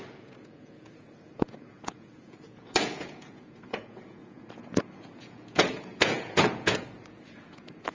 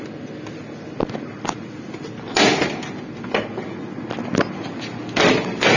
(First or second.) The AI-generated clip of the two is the first